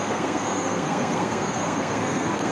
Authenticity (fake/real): fake